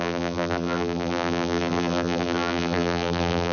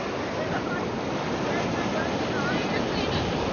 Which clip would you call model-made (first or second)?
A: first